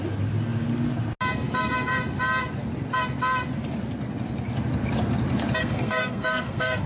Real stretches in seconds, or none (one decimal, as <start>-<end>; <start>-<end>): 0.0-5.6